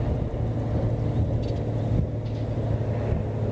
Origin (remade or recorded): recorded